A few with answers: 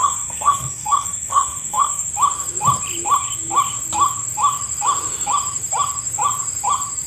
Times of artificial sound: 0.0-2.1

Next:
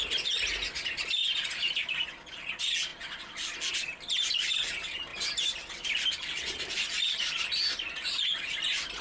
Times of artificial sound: none

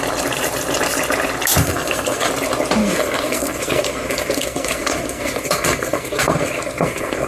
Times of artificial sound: 1.6-2.3; 2.8-7.3

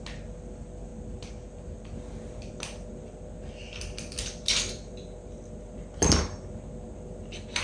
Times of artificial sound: none

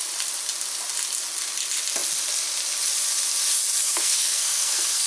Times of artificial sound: 3.8-5.1

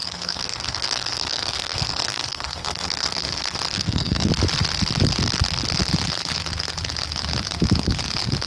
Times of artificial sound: 0.0-4.3

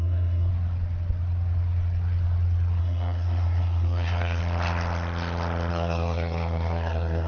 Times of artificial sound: 0.0-0.5; 2.8-4.4; 5.7-7.3